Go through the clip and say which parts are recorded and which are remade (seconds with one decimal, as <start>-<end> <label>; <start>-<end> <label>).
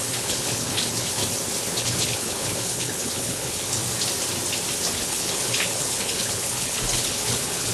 0.0-1.2 remade; 1.2-1.8 recorded; 1.8-3.8 remade; 3.8-4.9 recorded; 4.9-7.7 remade